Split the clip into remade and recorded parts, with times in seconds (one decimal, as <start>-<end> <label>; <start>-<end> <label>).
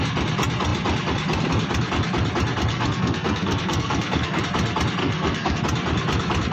0.0-2.7 recorded; 2.7-4.4 remade; 4.4-5.0 recorded; 5.0-5.6 remade; 5.6-6.5 recorded